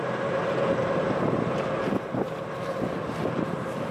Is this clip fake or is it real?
fake